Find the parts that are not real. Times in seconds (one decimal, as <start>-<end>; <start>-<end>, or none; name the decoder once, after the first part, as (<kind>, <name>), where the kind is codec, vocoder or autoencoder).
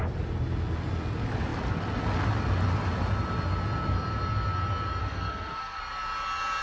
5.0-5.8 (codec, SNAC)